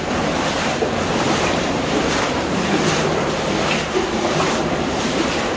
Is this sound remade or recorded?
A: remade